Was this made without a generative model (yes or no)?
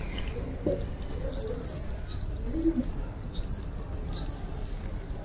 yes